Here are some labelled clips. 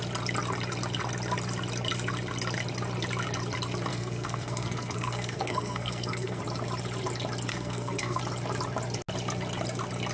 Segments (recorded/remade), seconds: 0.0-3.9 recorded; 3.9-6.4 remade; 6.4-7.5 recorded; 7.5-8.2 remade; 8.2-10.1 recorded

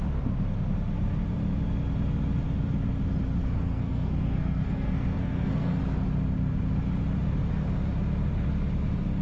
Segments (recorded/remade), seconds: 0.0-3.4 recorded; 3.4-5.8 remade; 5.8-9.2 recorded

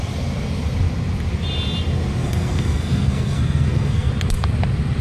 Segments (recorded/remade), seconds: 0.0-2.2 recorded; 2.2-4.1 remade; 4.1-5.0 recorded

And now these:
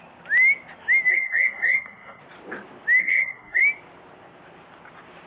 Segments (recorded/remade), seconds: 0.0-1.1 recorded; 1.1-2.2 remade; 2.2-3.0 recorded; 3.0-3.6 remade; 3.6-5.3 recorded